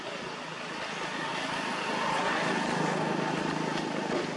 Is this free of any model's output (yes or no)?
yes